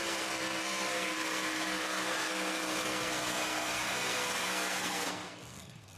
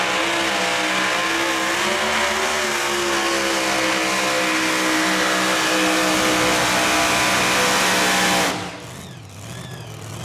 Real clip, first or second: second